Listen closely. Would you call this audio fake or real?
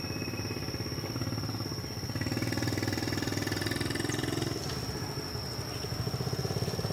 real